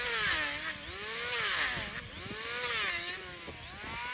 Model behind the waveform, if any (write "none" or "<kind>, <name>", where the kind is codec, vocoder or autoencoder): none